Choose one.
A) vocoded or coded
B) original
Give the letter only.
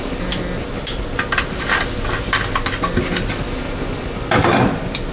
B